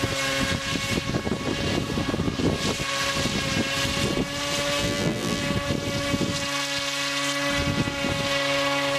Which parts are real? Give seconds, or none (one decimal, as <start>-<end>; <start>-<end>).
0.0-4.8; 5.4-9.0